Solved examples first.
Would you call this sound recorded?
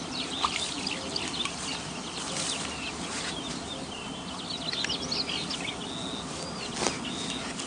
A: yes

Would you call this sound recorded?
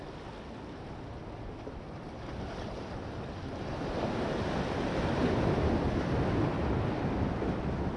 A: yes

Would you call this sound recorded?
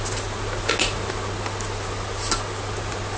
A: yes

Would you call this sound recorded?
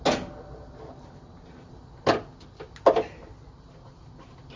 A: yes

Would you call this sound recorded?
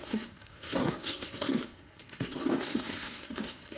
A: no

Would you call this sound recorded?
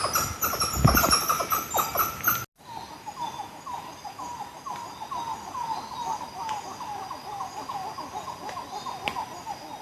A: yes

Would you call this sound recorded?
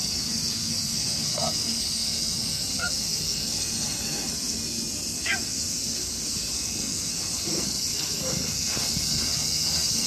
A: no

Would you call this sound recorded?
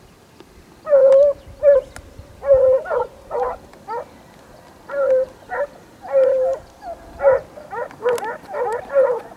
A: yes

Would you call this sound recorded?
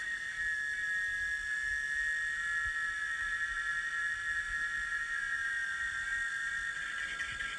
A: yes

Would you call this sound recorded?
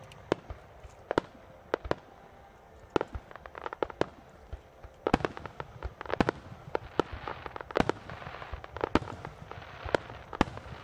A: yes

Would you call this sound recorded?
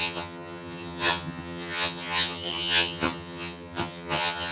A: no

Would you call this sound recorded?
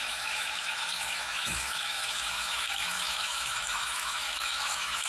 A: no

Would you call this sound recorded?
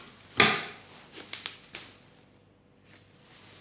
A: yes